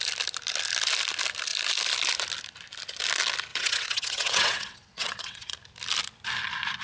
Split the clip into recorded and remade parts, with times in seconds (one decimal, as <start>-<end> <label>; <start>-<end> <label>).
0.0-3.5 recorded; 3.5-5.5 remade; 5.5-6.8 recorded